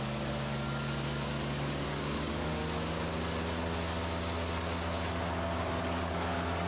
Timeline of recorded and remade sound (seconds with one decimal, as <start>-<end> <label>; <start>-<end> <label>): 0.0-2.6 remade; 2.6-5.8 recorded; 5.8-6.7 remade

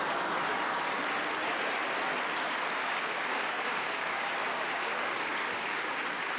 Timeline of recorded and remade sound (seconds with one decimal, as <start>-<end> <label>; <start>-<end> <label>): 0.0-2.8 recorded; 2.8-6.0 remade; 6.0-6.4 recorded

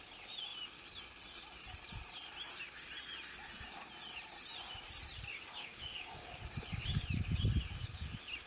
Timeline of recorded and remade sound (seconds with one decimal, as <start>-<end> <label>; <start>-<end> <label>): 0.0-5.6 recorded; 5.6-6.3 remade; 6.3-8.5 recorded

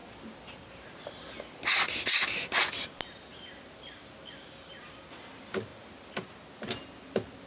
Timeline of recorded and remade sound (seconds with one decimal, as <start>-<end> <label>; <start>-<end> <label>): 0.0-7.5 recorded

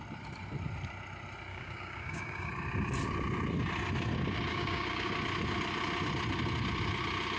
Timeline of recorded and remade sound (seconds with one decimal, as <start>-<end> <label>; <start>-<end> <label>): 0.0-1.5 recorded; 1.5-2.5 remade; 2.5-4.5 recorded; 4.5-5.1 remade; 5.1-7.4 recorded